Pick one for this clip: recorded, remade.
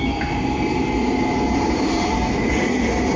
recorded